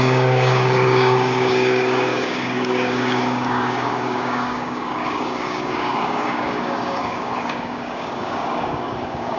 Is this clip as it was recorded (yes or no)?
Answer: no